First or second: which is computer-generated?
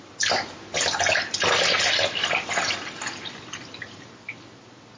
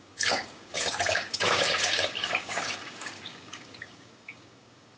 second